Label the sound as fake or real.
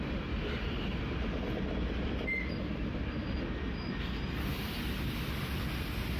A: real